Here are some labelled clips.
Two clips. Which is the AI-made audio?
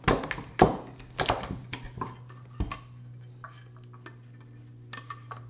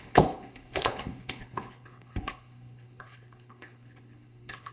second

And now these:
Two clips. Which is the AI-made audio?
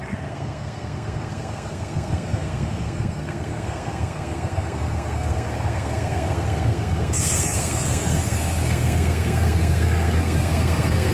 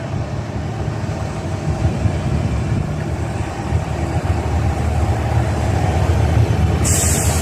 first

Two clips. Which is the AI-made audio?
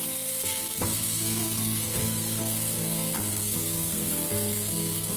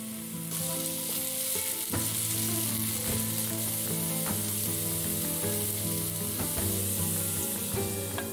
first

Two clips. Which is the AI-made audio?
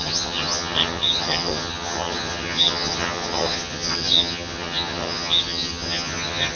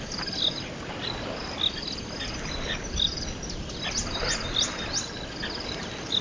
first